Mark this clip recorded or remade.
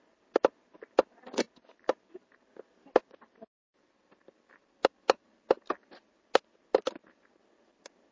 recorded